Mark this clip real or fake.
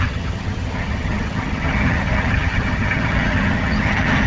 fake